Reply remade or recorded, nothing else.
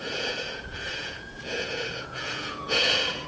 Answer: remade